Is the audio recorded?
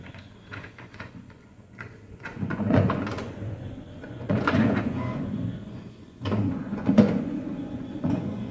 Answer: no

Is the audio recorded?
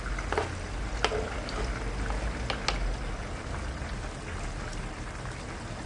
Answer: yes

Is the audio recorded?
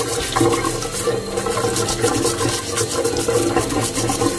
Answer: yes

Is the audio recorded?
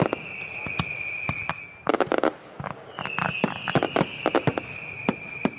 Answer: yes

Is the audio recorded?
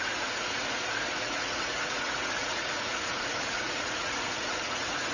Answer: no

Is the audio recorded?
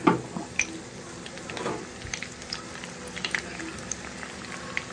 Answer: yes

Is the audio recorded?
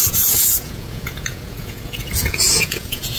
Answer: no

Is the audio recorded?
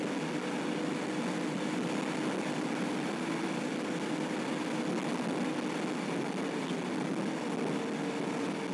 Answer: yes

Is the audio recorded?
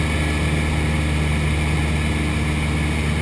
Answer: yes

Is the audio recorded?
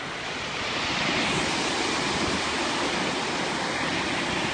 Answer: yes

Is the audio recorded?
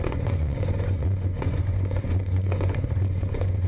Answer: no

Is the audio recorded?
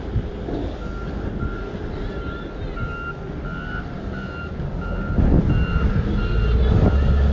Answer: yes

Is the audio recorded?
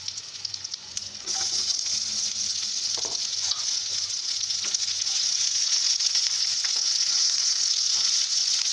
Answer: no